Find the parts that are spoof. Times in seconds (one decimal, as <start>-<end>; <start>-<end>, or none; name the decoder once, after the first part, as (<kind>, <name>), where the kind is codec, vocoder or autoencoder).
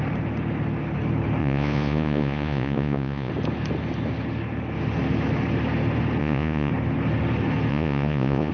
1.4-3.3 (vocoder, Vocos); 6.2-6.7; 7.7-8.5